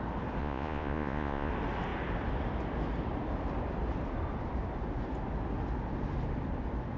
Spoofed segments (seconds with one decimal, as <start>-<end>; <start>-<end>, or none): 0.4-1.5